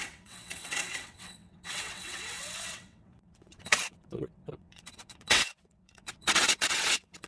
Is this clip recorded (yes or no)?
no